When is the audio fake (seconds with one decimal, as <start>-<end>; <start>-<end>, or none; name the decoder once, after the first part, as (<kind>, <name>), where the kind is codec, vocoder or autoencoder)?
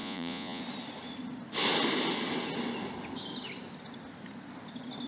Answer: 0.0-0.6 (vocoder, Vocos)